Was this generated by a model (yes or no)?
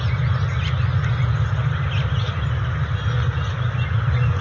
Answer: no